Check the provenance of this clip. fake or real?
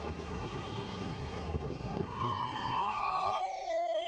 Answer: fake